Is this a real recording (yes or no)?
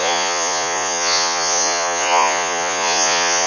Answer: no